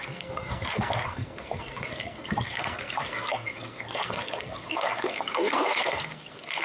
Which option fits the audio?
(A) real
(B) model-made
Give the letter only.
B